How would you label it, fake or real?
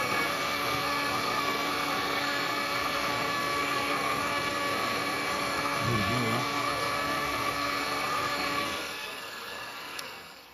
fake